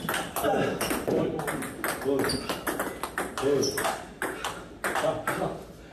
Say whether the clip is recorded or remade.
recorded